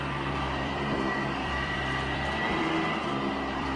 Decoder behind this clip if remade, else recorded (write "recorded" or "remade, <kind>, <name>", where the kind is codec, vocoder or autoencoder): remade, vocoder, BigVGAN v2